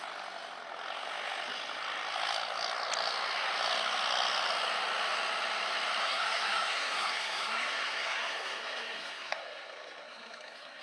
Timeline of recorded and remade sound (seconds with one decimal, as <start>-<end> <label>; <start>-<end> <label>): 0.0-6.0 recorded; 6.0-10.8 remade